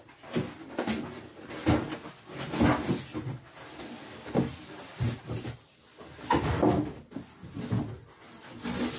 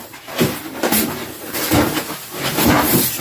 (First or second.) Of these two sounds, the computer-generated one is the second